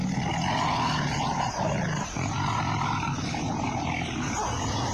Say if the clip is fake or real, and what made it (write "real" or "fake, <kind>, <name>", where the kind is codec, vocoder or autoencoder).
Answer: real